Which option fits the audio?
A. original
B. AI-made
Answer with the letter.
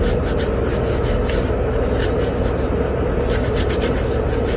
A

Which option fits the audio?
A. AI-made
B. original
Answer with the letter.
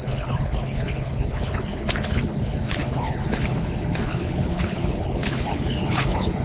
A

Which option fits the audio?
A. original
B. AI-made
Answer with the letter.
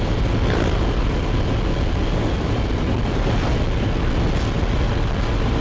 A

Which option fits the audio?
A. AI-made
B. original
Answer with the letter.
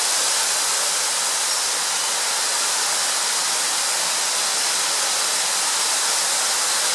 B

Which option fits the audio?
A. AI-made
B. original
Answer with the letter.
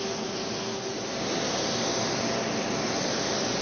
B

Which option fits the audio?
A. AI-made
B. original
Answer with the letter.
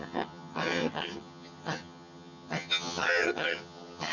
A